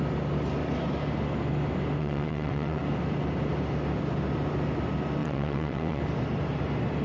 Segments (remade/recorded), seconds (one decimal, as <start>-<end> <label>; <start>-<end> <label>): 0.0-2.0 recorded; 2.0-2.8 remade; 2.8-5.2 recorded; 5.2-6.0 remade; 6.0-7.0 recorded